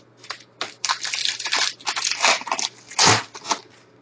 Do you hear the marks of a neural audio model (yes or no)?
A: no